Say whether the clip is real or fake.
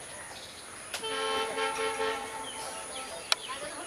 real